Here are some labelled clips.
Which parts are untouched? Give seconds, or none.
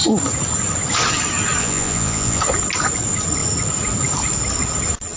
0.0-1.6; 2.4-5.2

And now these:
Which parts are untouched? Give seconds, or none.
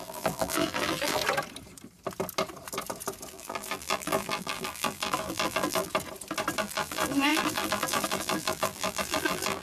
1.2-3.3; 5.9-6.6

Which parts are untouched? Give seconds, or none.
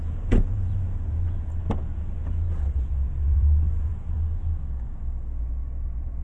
none